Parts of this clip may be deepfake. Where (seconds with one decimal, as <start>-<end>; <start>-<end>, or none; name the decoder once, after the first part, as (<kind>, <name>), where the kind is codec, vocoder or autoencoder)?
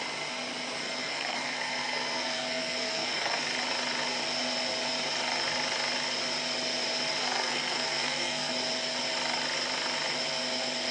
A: 0.8-3.4 (codec, SNAC); 7.2-8.5